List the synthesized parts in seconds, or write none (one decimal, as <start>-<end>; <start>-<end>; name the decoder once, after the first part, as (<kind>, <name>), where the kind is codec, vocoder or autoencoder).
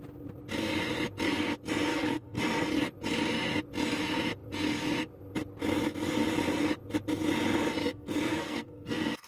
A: 1.9-2.4 (codec, SNAC); 7.8-9.3